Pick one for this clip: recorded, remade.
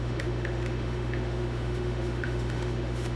remade